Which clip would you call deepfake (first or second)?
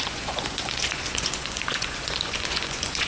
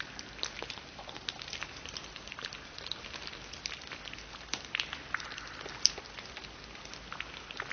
first